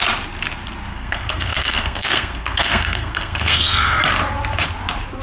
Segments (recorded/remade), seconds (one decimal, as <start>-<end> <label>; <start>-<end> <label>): 0.0-0.9 recorded; 0.9-4.0 remade; 4.0-5.2 recorded